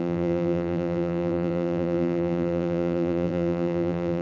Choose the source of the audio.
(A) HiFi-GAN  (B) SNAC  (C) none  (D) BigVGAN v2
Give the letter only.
D